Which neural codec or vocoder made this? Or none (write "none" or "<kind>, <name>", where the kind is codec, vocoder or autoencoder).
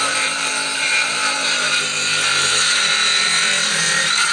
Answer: vocoder, BigVGAN v2